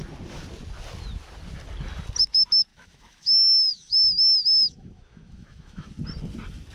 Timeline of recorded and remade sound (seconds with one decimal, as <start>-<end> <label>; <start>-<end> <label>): 0.0-2.7 recorded; 2.7-5.9 remade; 5.9-6.7 recorded